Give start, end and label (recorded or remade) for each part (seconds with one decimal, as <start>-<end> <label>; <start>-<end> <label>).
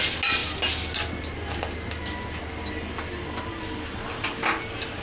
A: 0.0-5.0 recorded